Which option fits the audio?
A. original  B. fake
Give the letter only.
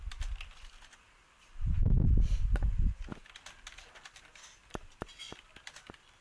B